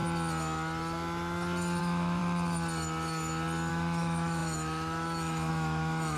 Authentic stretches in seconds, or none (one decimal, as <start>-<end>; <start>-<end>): 0.0-1.8; 2.2-3.7